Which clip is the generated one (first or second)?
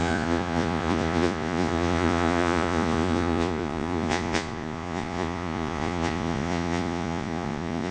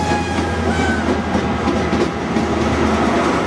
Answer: first